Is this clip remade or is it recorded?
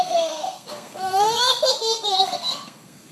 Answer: remade